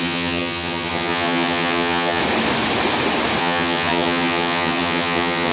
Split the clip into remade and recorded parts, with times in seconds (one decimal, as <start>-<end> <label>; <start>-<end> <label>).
0.0-2.2 remade; 2.2-3.4 recorded; 3.4-5.5 remade